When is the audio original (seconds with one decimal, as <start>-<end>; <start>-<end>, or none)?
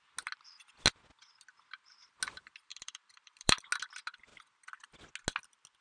0.0-2.7; 3.7-5.8